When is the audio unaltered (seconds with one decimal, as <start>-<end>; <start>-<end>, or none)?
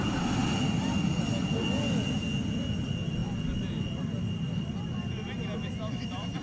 0.0-6.4